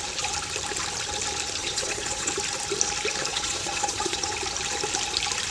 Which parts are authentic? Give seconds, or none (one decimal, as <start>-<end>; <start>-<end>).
0.0-1.6; 2.3-3.3; 4.3-5.5